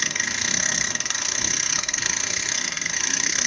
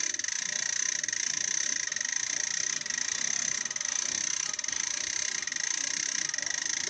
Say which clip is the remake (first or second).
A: first